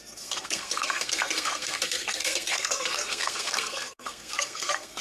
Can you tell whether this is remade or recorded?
remade